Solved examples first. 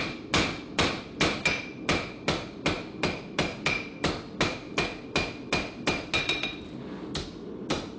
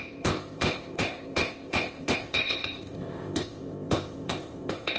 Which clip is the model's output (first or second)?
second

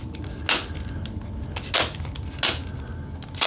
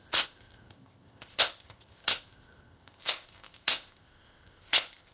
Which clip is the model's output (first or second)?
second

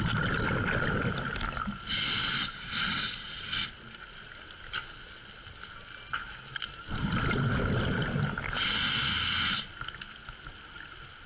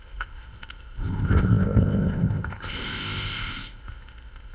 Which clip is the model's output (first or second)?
second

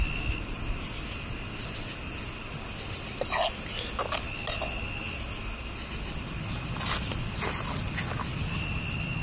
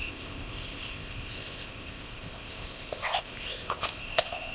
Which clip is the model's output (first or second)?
second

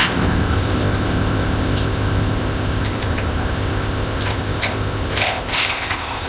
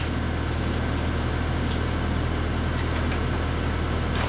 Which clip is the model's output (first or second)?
first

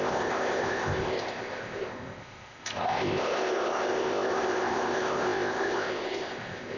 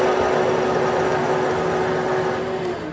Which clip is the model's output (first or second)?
first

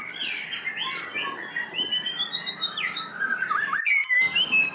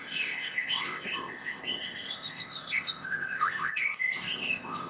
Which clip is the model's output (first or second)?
second